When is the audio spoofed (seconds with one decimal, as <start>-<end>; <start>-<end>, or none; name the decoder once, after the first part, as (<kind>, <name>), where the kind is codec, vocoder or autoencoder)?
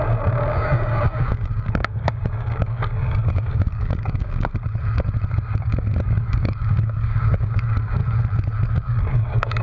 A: 0.0-4.5 (codec, DAC); 5.3-8.0; 8.7-9.6